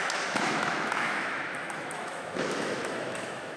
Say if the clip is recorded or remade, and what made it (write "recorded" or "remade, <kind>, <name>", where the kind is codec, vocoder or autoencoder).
remade, autoencoder, DAC-VAE